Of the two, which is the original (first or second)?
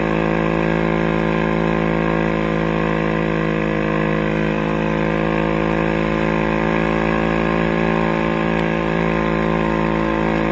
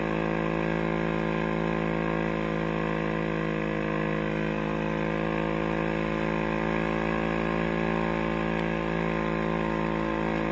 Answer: second